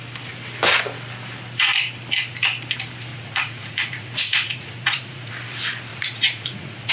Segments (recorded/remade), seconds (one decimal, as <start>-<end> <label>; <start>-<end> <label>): 0.0-3.1 recorded; 3.1-5.3 remade; 5.3-5.9 recorded; 5.9-6.9 remade